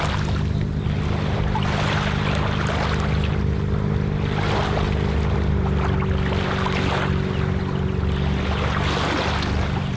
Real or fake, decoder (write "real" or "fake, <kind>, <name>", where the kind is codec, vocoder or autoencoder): real